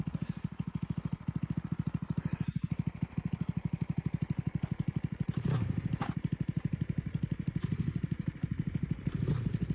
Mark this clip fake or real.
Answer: fake